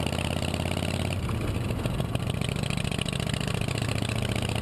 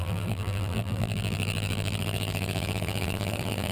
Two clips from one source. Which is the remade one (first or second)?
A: second